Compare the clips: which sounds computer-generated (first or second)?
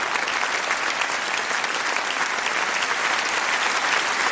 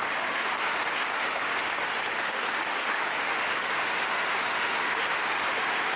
second